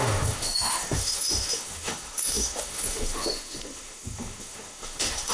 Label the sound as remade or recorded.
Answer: remade